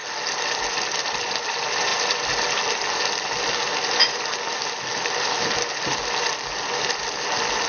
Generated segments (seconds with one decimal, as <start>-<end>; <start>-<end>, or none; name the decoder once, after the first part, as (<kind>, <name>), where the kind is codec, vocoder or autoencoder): none